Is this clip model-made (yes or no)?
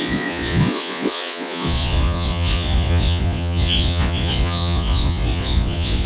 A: yes